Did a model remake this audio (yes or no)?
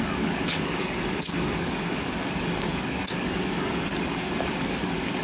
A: yes